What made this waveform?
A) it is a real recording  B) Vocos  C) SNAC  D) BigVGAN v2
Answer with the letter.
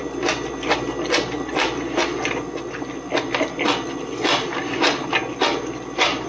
A